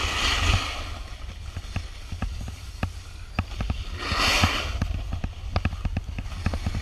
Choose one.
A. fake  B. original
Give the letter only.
B